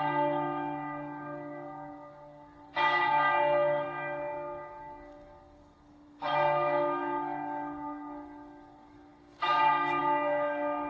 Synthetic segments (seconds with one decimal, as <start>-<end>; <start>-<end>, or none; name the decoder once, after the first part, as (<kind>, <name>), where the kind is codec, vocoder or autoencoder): 0.0-10.9 (codec, DAC)

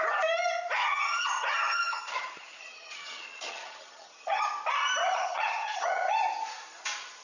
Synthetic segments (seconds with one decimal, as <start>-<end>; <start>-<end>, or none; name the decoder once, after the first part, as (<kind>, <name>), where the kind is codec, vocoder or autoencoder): 0.8-4.4 (vocoder, HiFi-GAN); 5.0-6.1